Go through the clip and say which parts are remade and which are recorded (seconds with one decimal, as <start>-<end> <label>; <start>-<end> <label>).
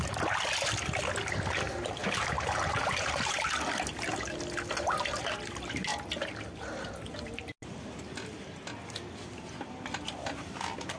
0.0-2.0 recorded; 2.0-3.4 remade; 3.4-11.0 recorded